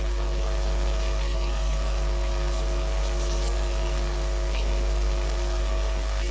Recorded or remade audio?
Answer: remade